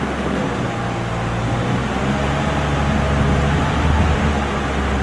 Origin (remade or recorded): recorded